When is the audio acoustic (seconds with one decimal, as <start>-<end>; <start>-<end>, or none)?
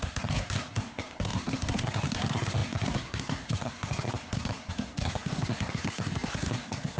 none